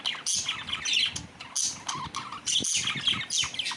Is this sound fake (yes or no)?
no